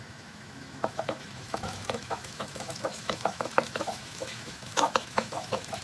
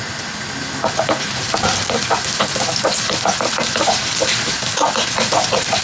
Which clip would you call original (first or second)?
second